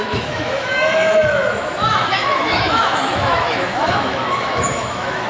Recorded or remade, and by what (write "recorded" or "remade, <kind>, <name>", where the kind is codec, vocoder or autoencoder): remade, autoencoder, DAC-VAE